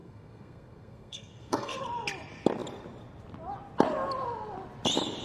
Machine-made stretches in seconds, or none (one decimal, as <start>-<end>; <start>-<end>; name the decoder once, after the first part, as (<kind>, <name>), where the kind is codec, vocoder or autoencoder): 0.0-1.8 (codec, SNAC)